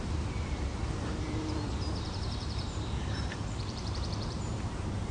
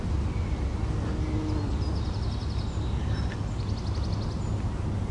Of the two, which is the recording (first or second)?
second